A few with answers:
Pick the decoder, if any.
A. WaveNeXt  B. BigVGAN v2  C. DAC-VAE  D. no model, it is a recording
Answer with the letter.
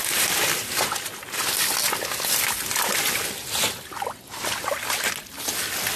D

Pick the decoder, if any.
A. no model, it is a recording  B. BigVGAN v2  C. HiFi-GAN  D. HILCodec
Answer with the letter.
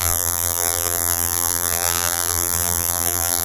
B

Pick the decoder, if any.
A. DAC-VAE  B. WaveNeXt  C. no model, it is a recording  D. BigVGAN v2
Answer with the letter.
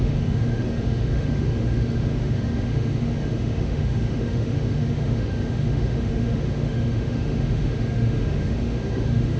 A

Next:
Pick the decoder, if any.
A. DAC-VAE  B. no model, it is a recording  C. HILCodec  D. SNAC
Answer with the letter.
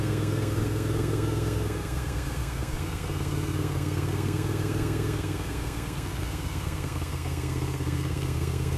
D